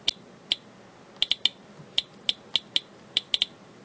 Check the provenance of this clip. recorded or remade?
recorded